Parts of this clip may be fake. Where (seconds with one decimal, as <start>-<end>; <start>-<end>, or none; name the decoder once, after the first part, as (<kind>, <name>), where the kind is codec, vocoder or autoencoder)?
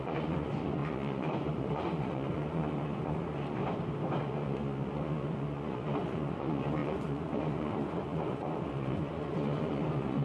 0.0-3.6 (vocoder, Vocos); 4.2-10.2